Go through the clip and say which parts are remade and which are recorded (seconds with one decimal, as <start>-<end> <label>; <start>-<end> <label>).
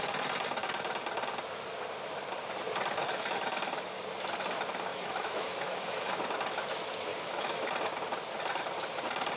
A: 0.0-3.0 recorded; 3.0-4.0 remade; 4.0-4.9 recorded; 4.9-6.1 remade; 6.1-7.1 recorded; 7.1-7.7 remade; 7.7-9.4 recorded